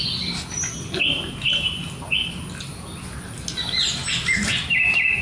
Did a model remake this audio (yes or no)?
no